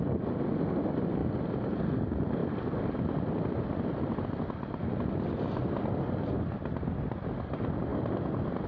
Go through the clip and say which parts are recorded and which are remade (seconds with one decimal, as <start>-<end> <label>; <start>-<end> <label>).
0.0-8.7 recorded